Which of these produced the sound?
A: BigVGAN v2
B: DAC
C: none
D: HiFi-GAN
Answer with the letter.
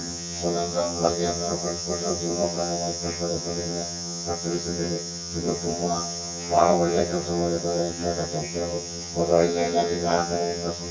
D